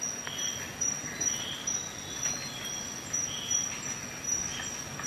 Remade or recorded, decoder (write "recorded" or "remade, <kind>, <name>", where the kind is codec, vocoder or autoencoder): recorded